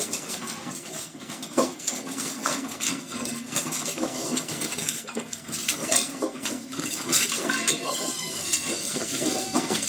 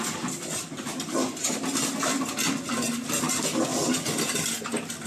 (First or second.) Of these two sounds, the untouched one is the second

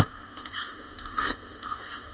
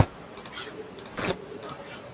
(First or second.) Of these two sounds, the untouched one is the second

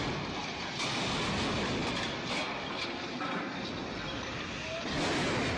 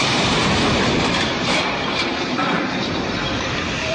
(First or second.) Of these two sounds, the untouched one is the first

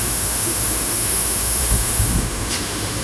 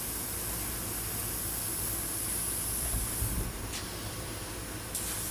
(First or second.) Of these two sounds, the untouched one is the second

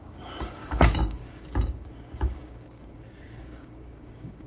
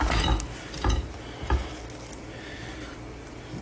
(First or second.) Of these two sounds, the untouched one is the second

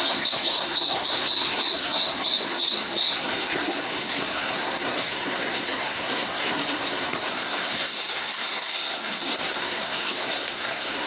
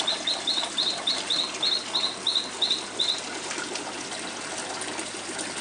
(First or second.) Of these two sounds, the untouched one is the second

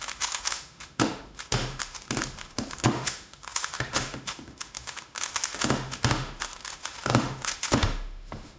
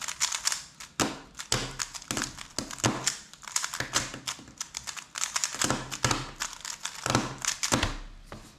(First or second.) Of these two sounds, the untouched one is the second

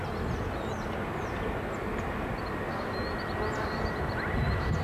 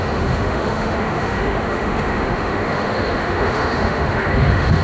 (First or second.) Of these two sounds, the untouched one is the first